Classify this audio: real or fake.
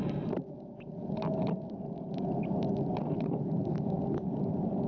real